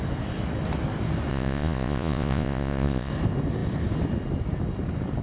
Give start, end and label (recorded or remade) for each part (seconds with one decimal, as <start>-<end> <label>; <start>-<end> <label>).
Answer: 0.0-1.3 recorded; 1.3-3.1 remade; 3.1-5.2 recorded